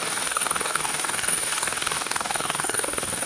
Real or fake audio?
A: fake